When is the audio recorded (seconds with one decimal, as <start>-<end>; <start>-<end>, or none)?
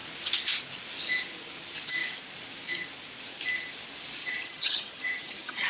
0.0-4.2